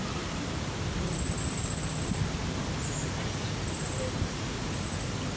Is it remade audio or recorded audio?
recorded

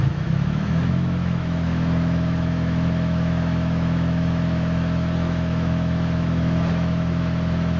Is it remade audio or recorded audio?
remade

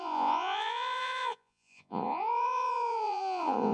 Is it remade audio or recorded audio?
remade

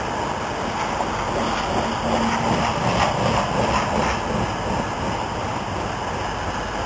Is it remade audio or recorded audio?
recorded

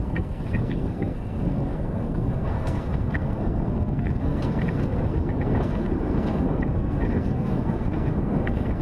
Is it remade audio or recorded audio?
remade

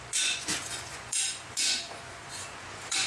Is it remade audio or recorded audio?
remade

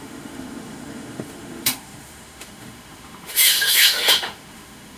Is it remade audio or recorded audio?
remade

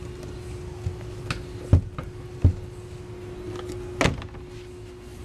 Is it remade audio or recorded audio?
recorded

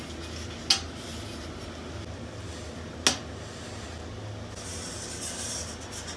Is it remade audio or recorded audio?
recorded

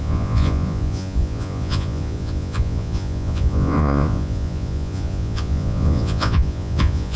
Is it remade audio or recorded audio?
remade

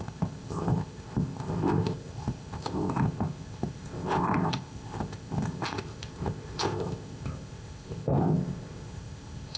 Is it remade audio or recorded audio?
remade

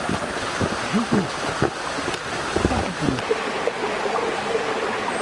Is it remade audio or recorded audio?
recorded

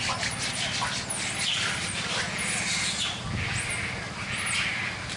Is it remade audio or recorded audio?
recorded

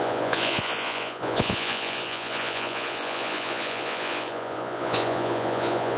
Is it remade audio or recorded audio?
remade